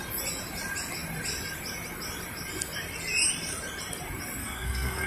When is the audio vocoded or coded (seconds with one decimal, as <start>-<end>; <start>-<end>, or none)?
4.4-5.1